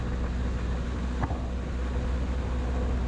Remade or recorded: recorded